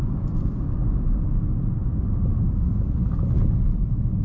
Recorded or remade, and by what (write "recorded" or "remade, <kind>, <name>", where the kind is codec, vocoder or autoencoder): recorded